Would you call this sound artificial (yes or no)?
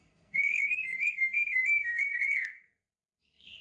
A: yes